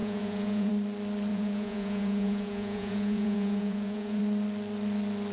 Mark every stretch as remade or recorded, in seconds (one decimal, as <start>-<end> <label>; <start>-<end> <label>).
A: 0.0-0.7 remade; 0.7-1.3 recorded; 1.3-4.2 remade; 4.2-5.3 recorded